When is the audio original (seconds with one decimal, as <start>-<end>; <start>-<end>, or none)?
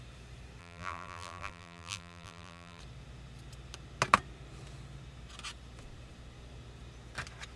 0.0-0.6; 2.8-7.6